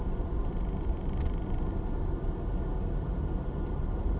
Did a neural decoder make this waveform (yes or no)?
no